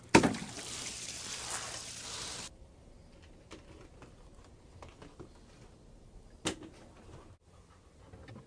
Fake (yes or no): no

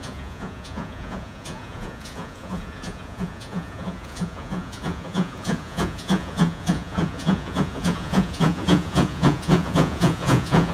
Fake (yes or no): yes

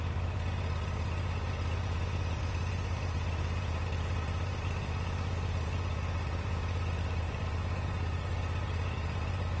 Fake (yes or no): yes